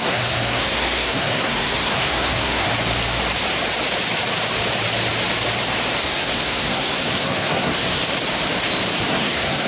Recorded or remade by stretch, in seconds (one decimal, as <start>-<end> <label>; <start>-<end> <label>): 0.0-2.7 remade; 2.7-6.0 recorded; 6.0-8.0 remade; 8.0-9.1 recorded; 9.1-9.7 remade